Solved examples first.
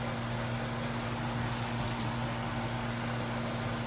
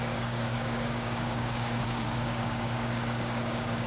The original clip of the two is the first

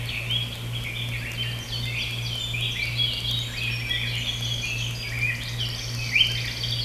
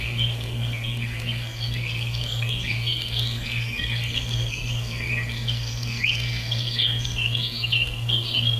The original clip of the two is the first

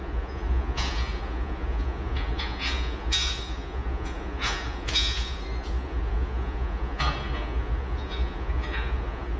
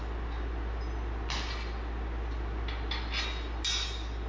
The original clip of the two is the second